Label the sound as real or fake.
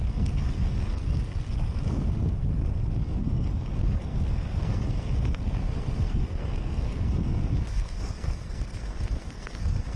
fake